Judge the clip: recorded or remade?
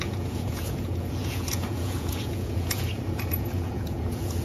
remade